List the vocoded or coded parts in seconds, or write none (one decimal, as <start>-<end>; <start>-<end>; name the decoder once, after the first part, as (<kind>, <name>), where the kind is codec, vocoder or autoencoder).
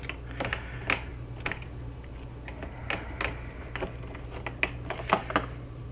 none